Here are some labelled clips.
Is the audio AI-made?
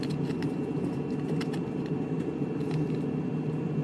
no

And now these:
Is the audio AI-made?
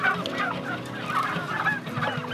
no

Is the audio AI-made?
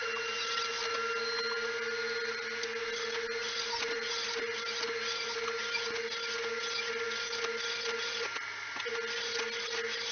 no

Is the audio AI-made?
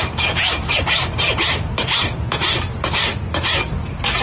no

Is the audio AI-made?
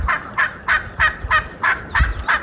no